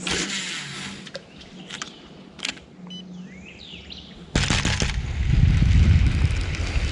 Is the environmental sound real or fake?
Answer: real